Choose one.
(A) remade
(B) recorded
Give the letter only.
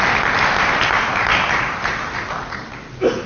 B